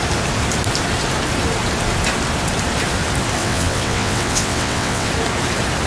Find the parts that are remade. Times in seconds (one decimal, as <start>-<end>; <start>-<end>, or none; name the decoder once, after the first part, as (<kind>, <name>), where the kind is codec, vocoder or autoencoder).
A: 3.4-5.1 (vocoder, WaveNeXt)